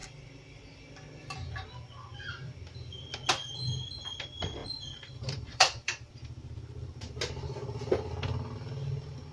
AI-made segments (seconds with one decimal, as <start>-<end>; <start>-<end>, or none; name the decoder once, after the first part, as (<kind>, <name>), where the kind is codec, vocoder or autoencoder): 0.0-0.6 (vocoder, BigVGAN v2); 4.6-6.1